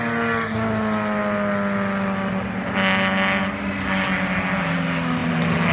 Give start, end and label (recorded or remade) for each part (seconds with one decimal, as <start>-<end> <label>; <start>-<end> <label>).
0.0-5.7 recorded